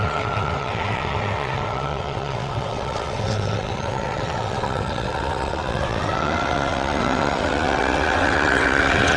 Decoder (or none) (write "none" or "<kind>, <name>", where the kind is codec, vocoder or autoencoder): vocoder, WaveNeXt